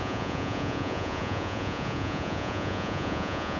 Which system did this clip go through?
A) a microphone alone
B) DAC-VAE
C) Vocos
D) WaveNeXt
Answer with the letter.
C